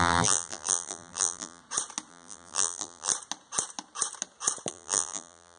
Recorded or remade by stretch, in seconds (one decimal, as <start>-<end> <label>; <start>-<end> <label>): 0.0-1.6 remade; 1.6-2.1 recorded; 2.1-3.1 remade; 3.1-4.7 recorded; 4.7-5.6 remade